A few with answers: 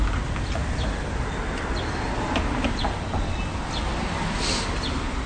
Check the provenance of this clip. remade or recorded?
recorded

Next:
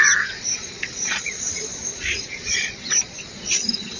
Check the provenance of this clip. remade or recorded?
remade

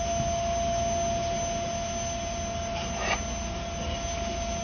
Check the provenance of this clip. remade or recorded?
recorded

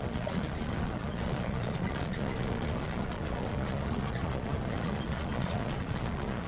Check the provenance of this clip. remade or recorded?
remade